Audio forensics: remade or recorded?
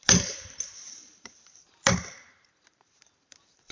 remade